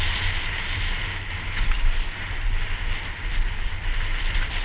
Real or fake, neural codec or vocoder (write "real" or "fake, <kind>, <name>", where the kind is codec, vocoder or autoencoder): real